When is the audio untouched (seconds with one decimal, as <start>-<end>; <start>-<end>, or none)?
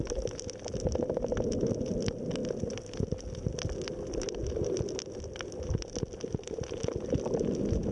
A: 0.0-7.9